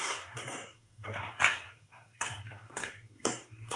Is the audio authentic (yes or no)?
no